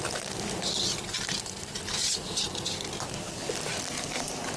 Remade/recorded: recorded